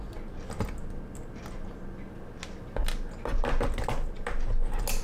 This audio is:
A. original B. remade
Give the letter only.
A